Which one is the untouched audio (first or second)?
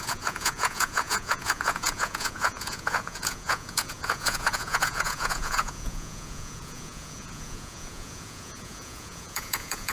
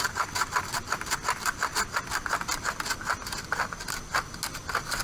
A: second